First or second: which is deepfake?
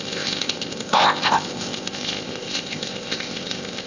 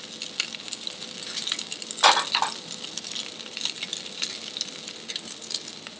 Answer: first